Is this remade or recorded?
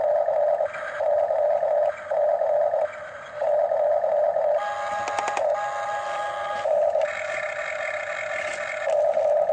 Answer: recorded